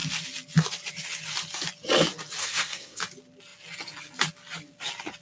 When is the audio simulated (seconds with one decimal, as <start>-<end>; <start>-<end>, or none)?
2.4-3.0